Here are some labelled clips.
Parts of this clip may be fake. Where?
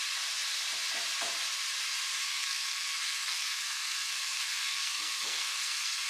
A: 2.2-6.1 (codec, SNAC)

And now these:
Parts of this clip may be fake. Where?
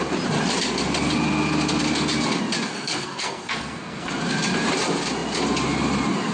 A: 2.7-4.1 (codec, SNAC)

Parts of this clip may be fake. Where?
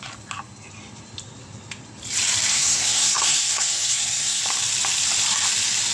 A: 2.5-4.4 (codec, SNAC)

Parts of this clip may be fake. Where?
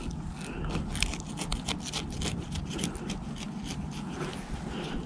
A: none